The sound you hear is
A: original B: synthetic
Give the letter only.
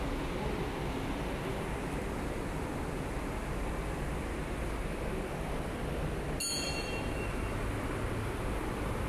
A